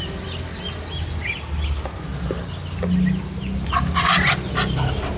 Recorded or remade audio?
recorded